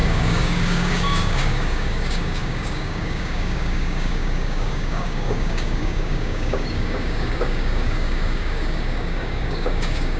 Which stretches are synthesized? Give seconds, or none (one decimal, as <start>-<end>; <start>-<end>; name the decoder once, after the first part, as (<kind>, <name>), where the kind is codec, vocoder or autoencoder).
0.0-10.2 (codec, DAC)